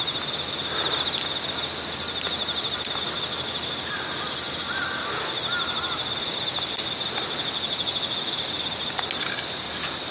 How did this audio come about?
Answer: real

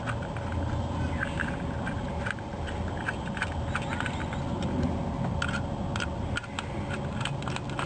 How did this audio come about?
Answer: real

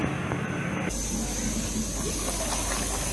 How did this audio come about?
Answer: real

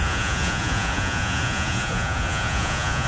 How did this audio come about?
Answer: fake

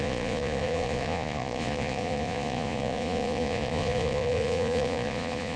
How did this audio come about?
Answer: fake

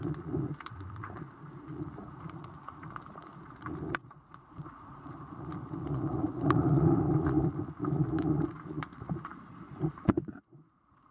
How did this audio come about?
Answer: fake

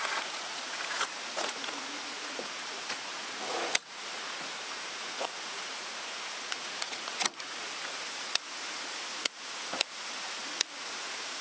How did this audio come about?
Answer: fake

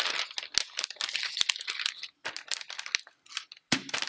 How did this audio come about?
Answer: real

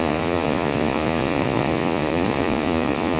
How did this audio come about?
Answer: fake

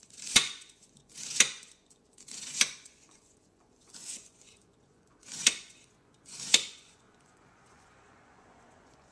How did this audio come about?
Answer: fake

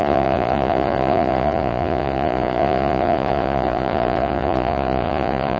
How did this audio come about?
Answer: fake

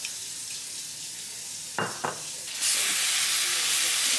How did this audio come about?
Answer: real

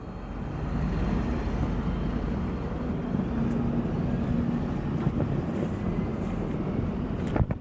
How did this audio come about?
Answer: real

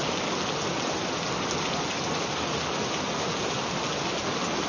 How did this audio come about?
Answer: real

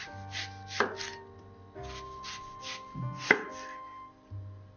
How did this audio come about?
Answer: real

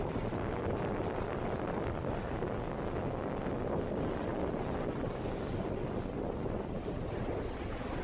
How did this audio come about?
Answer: real